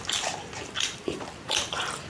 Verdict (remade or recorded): remade